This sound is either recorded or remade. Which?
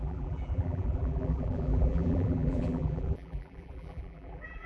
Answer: remade